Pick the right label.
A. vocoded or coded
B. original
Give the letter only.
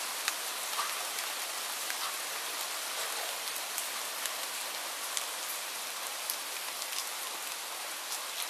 B